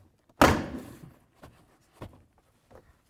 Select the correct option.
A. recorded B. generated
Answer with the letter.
A